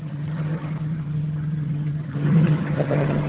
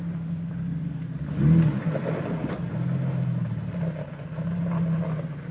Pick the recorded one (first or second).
second